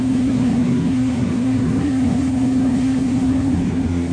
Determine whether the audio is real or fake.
fake